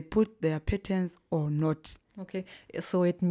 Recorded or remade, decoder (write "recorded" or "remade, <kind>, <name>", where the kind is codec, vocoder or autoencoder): recorded